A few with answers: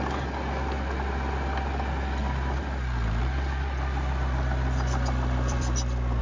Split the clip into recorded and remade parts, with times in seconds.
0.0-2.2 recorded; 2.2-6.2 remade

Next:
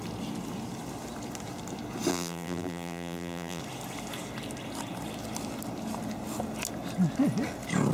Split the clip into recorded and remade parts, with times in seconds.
0.0-2.1 recorded; 2.1-3.6 remade; 3.6-7.9 recorded

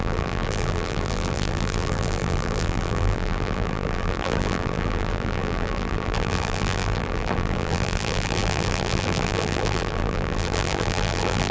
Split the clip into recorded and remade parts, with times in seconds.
0.0-11.5 remade